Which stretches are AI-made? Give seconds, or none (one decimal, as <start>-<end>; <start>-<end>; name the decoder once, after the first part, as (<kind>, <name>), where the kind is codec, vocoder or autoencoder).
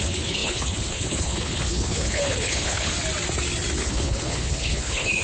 0.0-2.9 (codec, HILCodec); 3.7-5.2